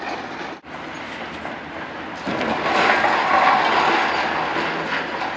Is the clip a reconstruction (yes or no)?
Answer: no